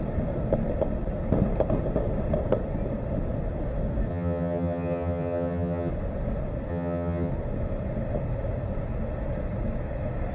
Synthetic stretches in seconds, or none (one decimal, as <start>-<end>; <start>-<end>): 4.1-5.9; 6.7-7.3